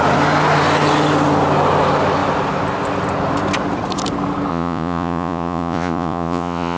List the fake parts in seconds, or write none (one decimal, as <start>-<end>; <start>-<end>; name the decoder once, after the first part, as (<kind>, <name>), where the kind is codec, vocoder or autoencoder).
4.5-6.8 (vocoder, Vocos)